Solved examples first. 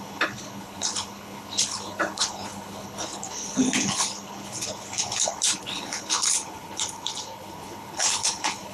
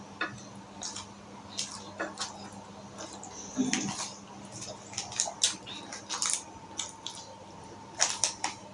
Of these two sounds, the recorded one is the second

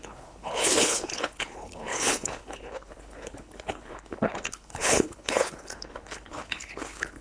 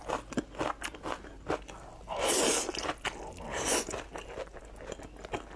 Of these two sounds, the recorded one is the second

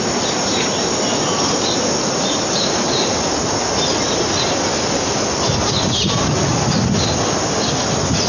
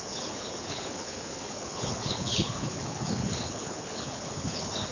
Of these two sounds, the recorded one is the first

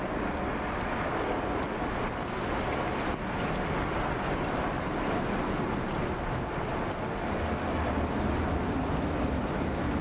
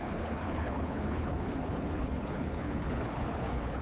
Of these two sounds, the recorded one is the first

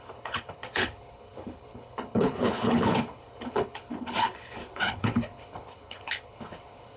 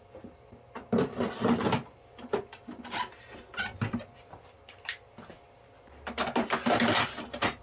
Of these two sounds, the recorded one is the second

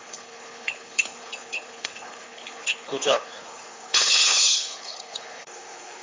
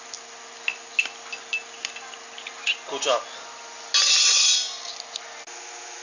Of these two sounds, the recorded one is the second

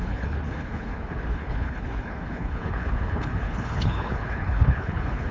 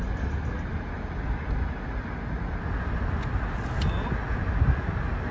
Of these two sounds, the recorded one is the second